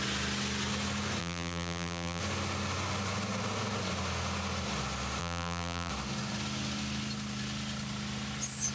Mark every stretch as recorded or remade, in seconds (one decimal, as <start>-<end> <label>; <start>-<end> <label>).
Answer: 0.0-1.2 recorded; 1.2-2.2 remade; 2.2-5.2 recorded; 5.2-5.9 remade; 5.9-8.7 recorded

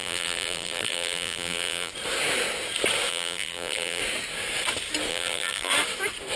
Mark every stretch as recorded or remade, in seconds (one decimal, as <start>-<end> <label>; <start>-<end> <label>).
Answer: 0.0-1.9 remade; 1.9-3.1 recorded; 3.1-4.0 remade; 4.0-5.1 recorded; 5.1-5.7 remade; 5.7-6.4 recorded

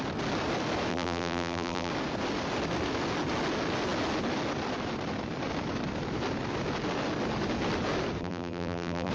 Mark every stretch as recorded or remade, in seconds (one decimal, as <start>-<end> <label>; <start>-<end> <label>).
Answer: 0.0-0.9 recorded; 0.9-1.9 remade; 1.9-8.2 recorded; 8.2-9.1 remade